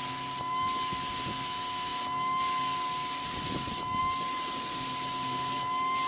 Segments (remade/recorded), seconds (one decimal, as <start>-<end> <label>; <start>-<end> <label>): 0.0-6.1 recorded